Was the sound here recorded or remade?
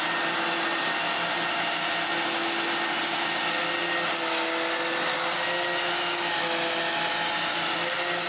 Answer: recorded